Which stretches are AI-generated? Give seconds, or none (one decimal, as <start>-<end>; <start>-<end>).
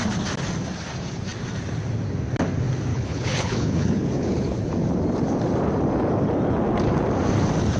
2.9-4.7